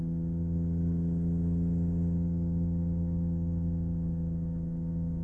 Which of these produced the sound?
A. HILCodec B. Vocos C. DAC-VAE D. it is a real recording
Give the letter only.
D